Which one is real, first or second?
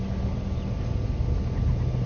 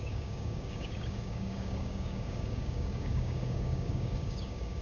first